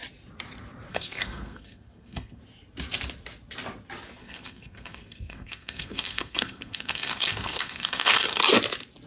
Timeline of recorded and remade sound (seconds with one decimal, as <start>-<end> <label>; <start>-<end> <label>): 0.0-0.9 recorded; 0.9-2.4 remade; 2.4-4.2 recorded; 4.2-8.4 remade; 8.4-9.1 recorded